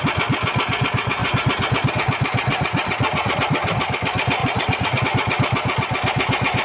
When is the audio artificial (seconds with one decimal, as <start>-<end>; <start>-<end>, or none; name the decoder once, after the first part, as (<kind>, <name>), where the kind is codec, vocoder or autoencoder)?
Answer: 2.5-3.4 (vocoder, Vocos); 4.4-5.0